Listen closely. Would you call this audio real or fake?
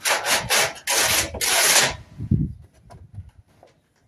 real